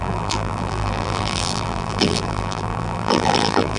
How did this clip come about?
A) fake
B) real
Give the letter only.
A